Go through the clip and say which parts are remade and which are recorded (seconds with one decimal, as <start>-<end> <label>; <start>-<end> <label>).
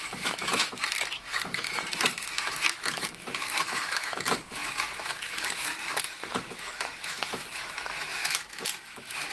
0.0-9.3 remade